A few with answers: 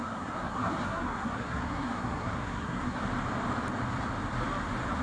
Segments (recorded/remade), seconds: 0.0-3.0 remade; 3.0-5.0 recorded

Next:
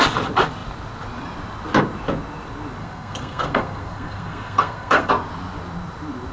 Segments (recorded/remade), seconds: 0.0-2.8 recorded; 2.8-5.1 remade; 5.1-6.3 recorded